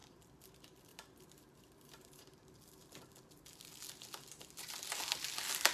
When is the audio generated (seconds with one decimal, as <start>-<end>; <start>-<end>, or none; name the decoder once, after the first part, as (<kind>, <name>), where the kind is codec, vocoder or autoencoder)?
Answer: 0.0-0.5 (vocoder, BigVGAN v2); 0.9-3.0